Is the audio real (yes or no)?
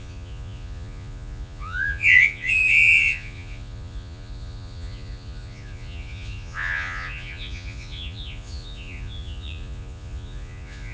no